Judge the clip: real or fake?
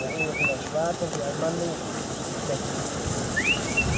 real